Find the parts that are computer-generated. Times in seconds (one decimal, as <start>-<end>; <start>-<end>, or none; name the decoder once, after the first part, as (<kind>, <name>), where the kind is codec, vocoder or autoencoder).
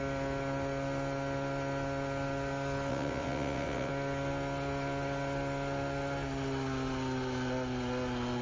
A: 2.9-3.9 (vocoder, WaveNeXt)